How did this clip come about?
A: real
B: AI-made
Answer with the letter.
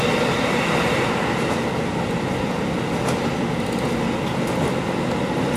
A